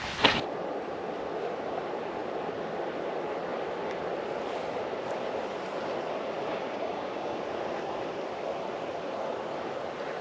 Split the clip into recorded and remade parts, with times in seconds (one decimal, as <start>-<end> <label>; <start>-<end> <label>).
0.0-6.5 recorded; 6.5-7.4 remade; 7.4-10.2 recorded